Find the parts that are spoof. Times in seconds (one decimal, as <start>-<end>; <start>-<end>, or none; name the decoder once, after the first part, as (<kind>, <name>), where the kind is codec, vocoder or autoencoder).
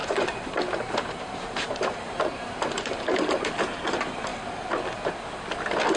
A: 0.0-3.6 (vocoder, BigVGAN v2)